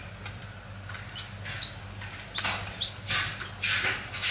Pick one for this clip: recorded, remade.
recorded